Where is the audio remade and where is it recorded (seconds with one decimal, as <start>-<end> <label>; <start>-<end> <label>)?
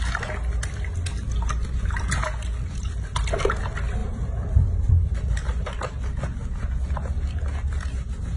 0.0-4.0 recorded; 4.0-6.2 remade; 6.2-8.4 recorded